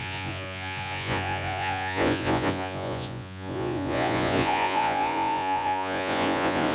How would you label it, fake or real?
fake